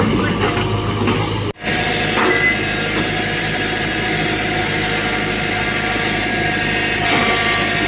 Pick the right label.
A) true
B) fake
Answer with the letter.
A